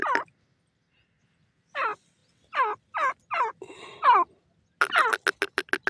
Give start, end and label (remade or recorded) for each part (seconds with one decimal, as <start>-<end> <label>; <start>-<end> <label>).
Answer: 0.0-5.9 recorded